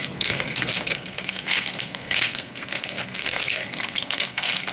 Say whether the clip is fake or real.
fake